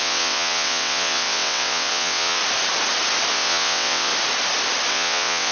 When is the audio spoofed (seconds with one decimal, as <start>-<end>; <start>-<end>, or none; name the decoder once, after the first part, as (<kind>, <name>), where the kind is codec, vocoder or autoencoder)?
0.0-2.4 (vocoder, WaveNeXt); 3.3-4.1; 4.9-5.5